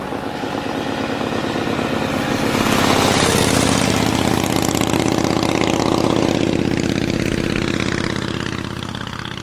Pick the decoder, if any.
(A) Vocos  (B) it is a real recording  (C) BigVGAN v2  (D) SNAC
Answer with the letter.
B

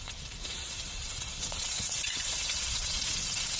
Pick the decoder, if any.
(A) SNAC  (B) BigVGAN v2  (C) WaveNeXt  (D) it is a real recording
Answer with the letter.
C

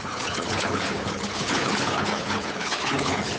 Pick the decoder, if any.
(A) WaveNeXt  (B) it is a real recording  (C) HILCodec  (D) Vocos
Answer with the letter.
C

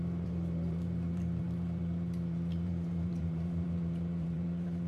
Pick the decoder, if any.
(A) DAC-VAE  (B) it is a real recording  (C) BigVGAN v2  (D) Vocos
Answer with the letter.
C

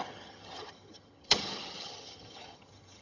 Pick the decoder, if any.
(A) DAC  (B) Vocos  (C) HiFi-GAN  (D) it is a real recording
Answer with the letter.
C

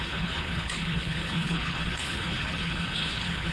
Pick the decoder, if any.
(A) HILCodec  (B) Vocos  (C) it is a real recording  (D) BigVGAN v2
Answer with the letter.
A